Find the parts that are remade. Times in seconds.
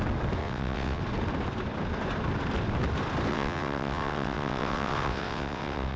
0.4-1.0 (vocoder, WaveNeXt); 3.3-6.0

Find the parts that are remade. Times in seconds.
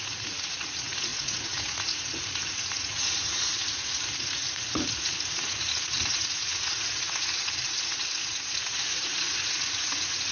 0.0-10.3 (vocoder, Vocos)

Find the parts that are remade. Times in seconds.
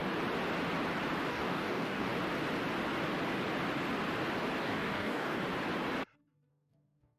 1.3-2.1 (codec, DAC); 4.6-5.4; 6.5-7.2